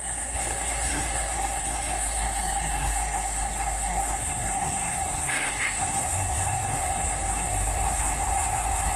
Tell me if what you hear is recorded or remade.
remade